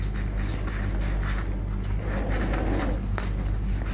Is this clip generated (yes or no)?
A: no